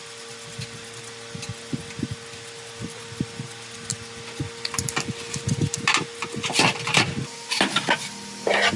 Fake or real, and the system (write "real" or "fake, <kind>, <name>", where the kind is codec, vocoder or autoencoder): real